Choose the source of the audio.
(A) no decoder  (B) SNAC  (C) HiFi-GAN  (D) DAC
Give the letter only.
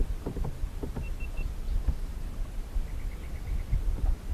A